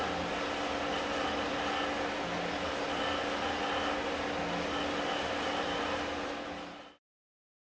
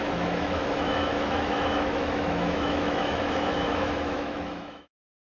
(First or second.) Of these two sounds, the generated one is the second